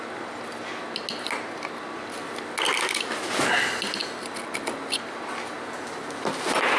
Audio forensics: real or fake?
real